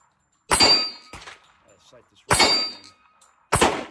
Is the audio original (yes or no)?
yes